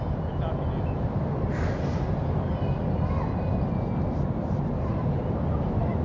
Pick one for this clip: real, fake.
real